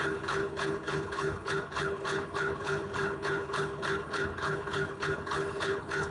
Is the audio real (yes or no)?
no